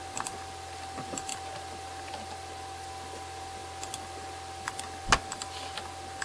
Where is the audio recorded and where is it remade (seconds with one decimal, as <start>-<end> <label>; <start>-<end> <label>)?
0.0-6.2 recorded